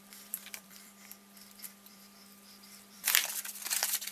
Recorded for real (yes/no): no